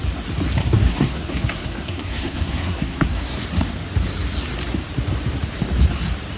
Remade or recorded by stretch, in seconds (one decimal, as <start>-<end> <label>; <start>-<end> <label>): 0.0-0.6 recorded; 0.6-3.4 remade; 3.4-6.4 recorded